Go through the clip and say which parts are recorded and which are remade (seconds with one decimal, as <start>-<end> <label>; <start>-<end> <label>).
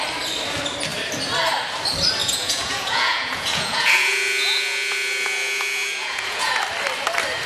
0.0-2.2 recorded; 2.2-6.6 remade; 6.6-7.5 recorded